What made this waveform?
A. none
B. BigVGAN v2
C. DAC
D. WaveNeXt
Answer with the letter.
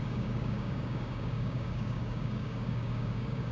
C